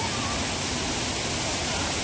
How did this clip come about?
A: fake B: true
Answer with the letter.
B